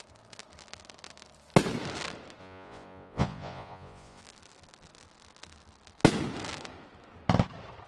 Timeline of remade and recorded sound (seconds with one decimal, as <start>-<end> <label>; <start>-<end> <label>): 0.0-2.4 recorded; 2.4-4.2 remade; 4.2-7.9 recorded

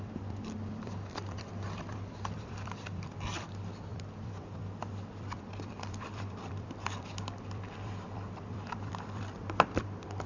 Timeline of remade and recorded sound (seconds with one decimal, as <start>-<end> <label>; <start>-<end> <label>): 0.0-10.3 remade

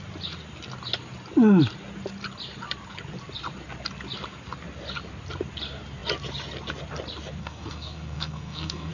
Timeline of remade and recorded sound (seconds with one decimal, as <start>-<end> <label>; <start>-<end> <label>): 0.0-7.4 recorded; 7.4-8.9 remade